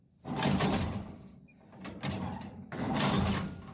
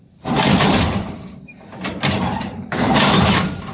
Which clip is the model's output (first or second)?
second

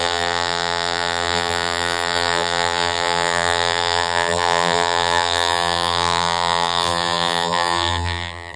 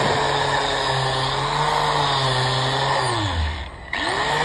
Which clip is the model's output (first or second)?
first